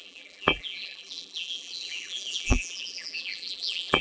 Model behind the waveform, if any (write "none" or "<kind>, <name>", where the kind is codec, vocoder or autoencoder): vocoder, BigVGAN v2